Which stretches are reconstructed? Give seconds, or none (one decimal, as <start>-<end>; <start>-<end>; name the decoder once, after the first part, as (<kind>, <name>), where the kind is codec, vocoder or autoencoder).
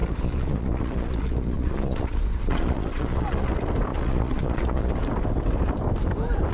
0.0-3.5 (vocoder, Vocos); 3.9-4.9